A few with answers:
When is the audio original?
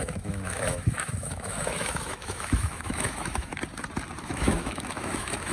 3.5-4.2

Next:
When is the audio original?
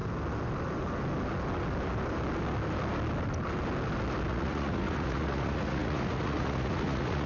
0.0-4.3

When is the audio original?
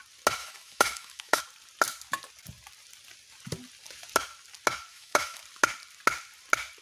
0.0-0.4; 1.4-4.9; 5.4-6.8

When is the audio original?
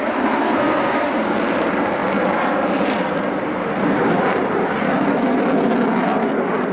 0.0-0.4; 1.1-6.7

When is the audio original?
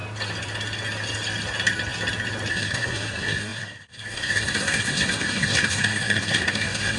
0.0-2.5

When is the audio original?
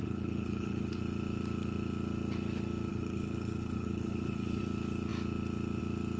1.0-2.9; 4.6-6.2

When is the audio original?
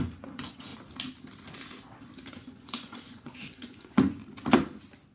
0.7-2.3; 4.2-5.1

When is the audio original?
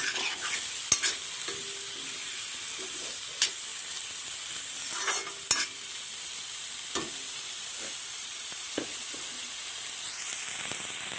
0.0-8.1; 9.5-11.2